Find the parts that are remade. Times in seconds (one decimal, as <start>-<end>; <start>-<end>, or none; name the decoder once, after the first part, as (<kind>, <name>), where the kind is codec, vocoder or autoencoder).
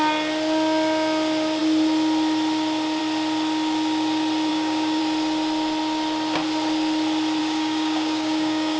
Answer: 4.5-5.0 (codec, DAC); 7.4-8.8